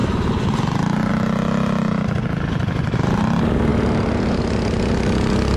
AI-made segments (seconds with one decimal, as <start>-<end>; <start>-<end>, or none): none